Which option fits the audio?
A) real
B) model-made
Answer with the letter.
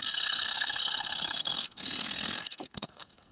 B